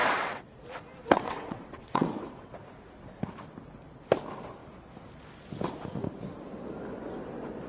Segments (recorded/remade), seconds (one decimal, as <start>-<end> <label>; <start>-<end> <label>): 0.0-0.6 remade; 0.6-1.0 recorded; 1.0-2.5 remade; 2.5-7.7 recorded